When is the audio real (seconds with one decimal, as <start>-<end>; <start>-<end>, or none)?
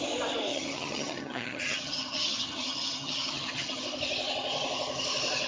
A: 0.0-0.5; 3.8-5.5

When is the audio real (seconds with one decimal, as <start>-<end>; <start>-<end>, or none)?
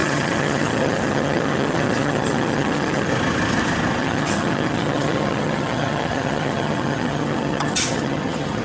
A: 3.1-4.0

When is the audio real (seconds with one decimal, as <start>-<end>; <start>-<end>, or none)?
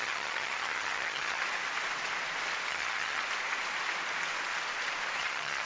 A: 1.4-2.7; 3.2-5.2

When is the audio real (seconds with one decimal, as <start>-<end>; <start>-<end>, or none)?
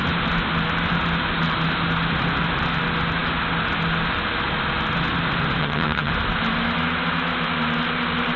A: 0.0-5.6; 6.1-8.4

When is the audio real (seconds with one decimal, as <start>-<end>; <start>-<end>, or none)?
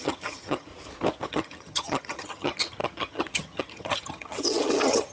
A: 0.7-1.3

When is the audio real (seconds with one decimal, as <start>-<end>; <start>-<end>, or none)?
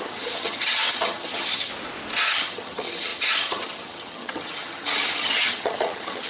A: 1.7-2.2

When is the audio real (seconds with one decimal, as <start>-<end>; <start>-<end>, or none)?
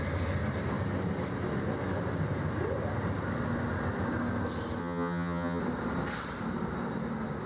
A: 0.0-4.8; 5.6-7.5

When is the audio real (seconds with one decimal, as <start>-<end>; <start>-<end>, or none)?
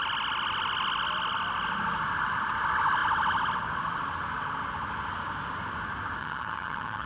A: 0.0-6.2